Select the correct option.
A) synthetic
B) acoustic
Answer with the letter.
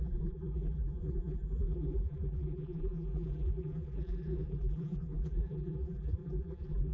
A